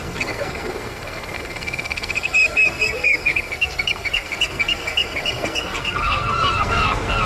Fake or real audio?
fake